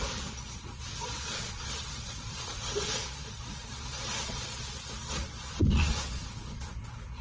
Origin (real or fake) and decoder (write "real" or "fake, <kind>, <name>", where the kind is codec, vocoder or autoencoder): fake, vocoder, Vocos